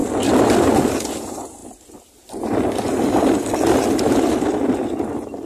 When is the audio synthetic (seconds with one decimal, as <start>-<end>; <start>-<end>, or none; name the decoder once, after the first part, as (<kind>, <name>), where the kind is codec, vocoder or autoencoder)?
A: none